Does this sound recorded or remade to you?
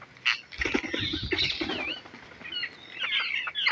recorded